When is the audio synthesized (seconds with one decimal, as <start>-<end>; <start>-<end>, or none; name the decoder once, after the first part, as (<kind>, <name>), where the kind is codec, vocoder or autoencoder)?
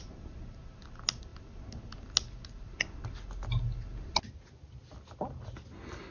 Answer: none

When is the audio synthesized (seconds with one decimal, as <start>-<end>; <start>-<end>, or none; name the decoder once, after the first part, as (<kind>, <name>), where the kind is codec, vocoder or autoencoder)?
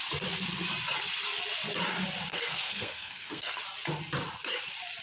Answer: 2.3-3.6 (codec, SNAC)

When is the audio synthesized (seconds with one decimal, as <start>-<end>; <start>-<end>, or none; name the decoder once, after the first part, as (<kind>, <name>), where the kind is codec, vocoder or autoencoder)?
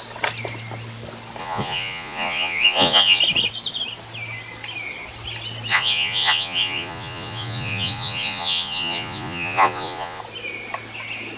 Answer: 1.4-3.2 (vocoder, Vocos); 5.7-10.2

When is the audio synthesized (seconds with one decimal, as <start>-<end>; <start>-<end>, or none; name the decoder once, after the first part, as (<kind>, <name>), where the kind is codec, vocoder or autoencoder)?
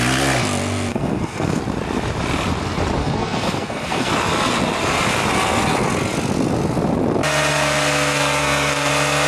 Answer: 0.9-1.6 (codec, SNAC); 3.0-4.1; 7.5-8.9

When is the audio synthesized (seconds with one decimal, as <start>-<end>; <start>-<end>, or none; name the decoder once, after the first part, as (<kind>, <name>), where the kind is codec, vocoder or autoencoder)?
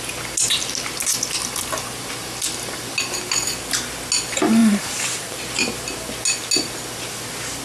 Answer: 4.6-5.4 (vocoder, BigVGAN v2)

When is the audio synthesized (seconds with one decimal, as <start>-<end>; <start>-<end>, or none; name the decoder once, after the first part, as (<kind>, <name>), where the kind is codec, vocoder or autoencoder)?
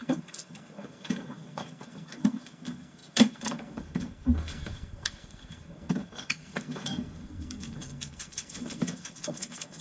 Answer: 0.0-9.8 (codec, SNAC)